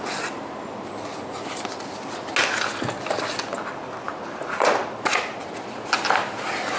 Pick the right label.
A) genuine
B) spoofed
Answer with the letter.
A